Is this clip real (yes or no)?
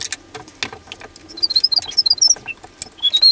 yes